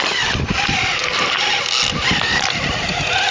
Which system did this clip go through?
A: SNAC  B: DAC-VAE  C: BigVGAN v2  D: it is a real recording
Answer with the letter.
D